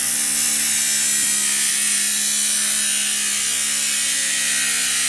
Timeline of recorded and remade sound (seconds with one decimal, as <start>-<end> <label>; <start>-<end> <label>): 0.0-5.1 recorded